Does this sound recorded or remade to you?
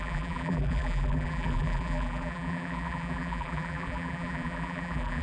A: remade